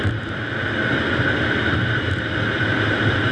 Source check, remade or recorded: recorded